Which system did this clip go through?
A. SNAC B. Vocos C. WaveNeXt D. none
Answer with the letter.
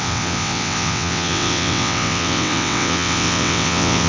C